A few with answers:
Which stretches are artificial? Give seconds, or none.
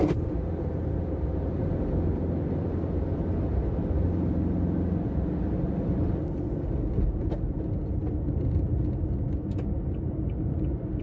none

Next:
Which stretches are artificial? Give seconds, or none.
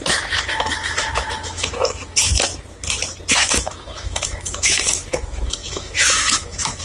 0.0-2.3; 3.3-6.8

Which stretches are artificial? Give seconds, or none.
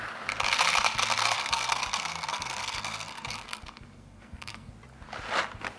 1.2-4.7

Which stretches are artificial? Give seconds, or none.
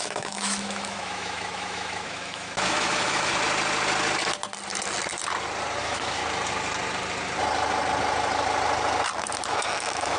0.0-3.3; 5.8-6.2; 9.5-10.2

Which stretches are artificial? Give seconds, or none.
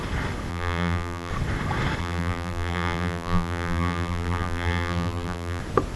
0.5-1.3; 2.0-5.6